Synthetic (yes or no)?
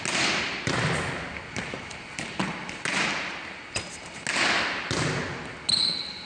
no